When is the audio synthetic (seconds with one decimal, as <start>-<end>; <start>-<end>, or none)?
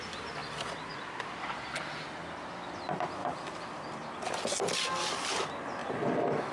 0.4-0.9; 3.2-4.4; 5.8-6.5